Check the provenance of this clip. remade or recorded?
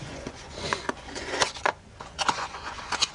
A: remade